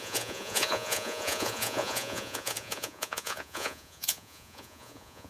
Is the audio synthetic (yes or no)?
yes